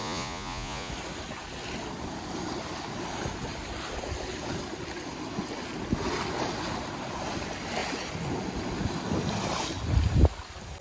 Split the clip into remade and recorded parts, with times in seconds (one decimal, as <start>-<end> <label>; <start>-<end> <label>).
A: 0.0-0.9 remade; 0.9-10.8 recorded